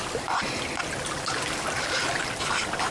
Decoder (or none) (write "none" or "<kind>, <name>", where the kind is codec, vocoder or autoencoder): none